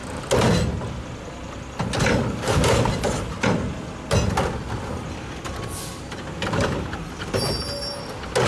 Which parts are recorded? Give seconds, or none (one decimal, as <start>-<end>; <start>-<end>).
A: 0.0-8.5